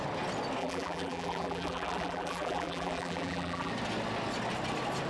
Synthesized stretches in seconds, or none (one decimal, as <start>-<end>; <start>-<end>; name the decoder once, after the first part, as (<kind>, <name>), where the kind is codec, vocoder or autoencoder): 0.6-3.7 (vocoder, BigVGAN v2)